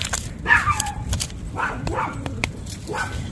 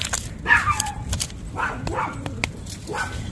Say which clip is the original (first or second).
second